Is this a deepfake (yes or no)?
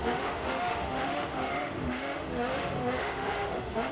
yes